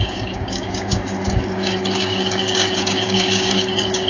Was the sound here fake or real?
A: fake